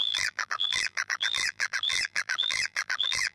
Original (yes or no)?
no